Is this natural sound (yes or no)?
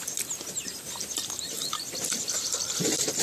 yes